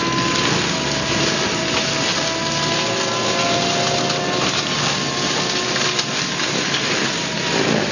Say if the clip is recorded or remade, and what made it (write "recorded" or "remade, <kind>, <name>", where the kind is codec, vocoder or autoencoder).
recorded